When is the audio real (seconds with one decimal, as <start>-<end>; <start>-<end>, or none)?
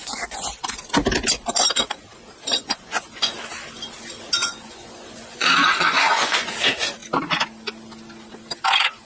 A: 0.6-2.5; 3.3-4.4; 6.5-9.1